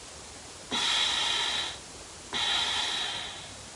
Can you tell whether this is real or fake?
real